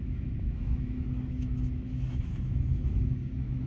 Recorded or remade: remade